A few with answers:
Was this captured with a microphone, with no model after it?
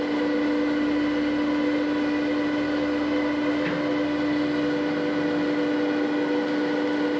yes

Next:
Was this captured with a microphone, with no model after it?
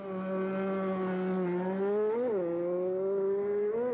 yes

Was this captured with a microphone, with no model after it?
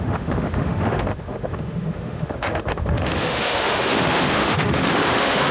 no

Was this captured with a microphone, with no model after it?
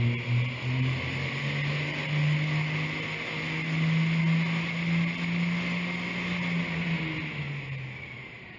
yes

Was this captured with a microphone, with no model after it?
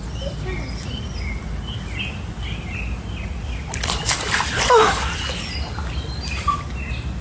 yes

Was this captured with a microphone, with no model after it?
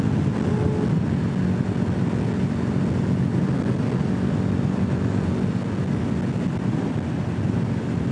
yes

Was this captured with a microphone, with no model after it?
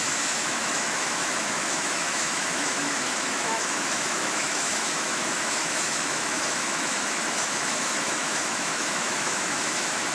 no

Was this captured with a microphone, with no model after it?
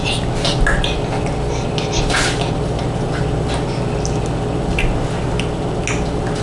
yes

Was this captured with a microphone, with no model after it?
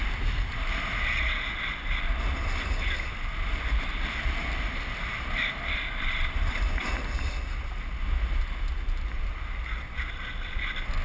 yes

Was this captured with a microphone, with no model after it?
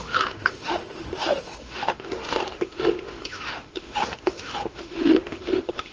no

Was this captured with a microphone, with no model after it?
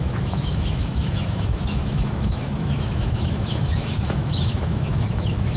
no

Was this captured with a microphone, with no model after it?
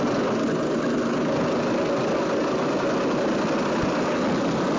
yes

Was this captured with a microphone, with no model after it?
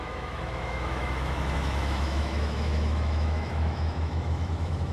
no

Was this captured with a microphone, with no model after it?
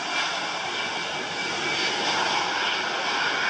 yes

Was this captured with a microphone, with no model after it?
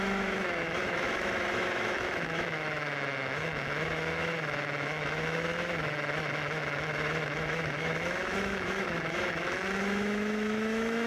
no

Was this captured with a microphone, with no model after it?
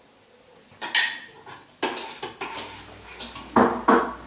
yes